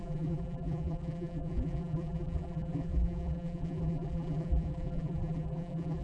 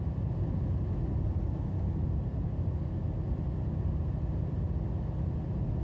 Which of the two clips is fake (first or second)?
first